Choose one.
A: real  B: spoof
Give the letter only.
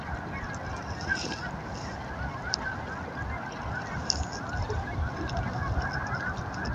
A